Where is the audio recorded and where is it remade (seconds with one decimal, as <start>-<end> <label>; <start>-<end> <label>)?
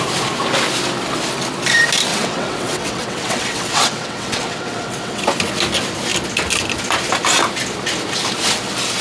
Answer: 0.0-2.1 recorded; 2.1-5.2 remade; 5.2-9.0 recorded